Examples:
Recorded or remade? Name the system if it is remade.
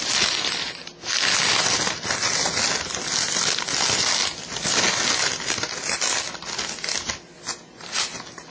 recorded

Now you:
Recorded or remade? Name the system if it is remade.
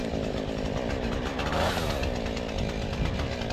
recorded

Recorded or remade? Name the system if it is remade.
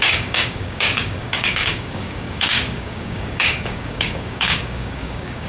remade, codec, DAC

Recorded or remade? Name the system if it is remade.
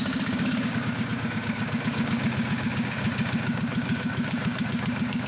remade, codec, DAC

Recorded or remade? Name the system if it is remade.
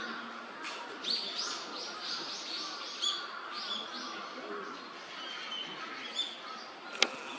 recorded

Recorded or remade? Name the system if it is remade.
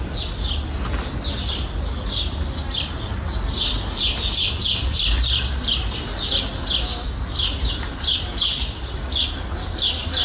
recorded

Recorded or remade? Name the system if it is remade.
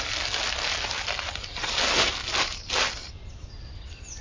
recorded